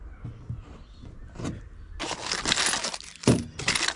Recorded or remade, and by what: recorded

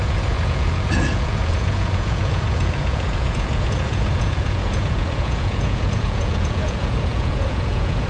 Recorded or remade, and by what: remade, vocoder, Vocos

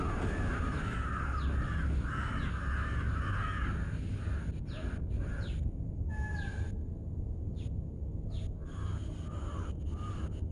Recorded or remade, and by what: recorded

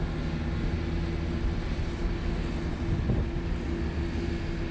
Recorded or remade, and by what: recorded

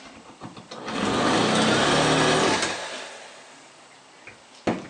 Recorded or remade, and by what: recorded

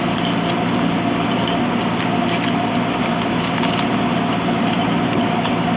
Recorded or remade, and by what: recorded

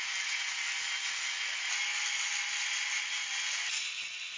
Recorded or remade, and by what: recorded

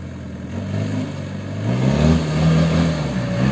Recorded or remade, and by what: recorded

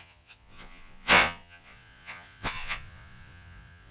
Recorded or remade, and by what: remade, vocoder, Vocos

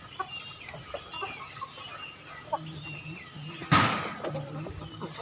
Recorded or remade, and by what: recorded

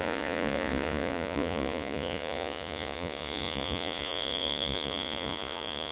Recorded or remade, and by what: remade, vocoder, Vocos